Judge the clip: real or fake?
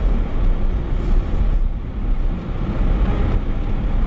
real